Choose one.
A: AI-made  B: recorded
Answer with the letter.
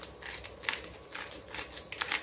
B